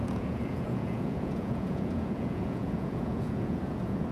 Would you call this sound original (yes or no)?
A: no